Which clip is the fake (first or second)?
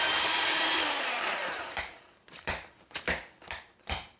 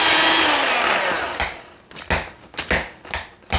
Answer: first